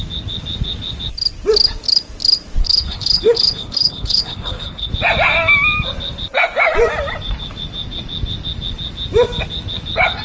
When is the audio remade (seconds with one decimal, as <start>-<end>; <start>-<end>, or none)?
2.6-4.9